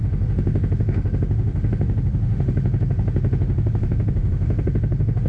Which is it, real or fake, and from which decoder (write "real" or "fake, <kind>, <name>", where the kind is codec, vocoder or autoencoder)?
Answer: fake, autoencoder, DAC-VAE